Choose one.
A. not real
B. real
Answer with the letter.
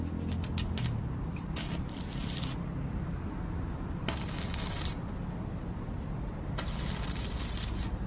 B